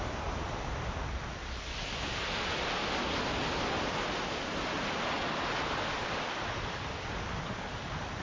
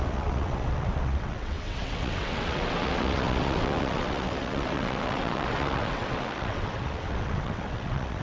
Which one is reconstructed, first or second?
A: second